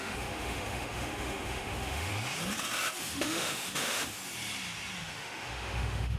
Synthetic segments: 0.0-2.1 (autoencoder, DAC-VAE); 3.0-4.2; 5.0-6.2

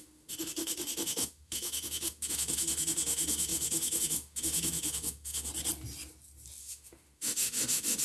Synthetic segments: 0.0-5.5 (autoencoder, DAC-VAE); 6.6-8.0

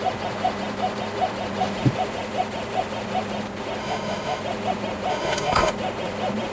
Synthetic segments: 3.8-4.4 (autoencoder, DAC-VAE); 5.1-5.7

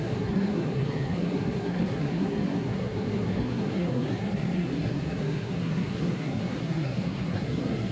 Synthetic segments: 0.0-7.9 (codec, SNAC)

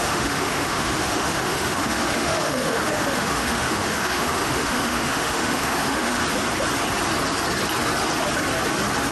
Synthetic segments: 0.0-6.2 (autoencoder, DAC-VAE)

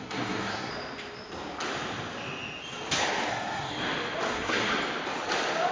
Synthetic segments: 0.0-0.7 (codec, SNAC); 3.3-3.7; 4.3-4.7